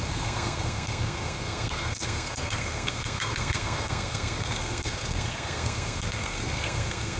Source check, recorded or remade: remade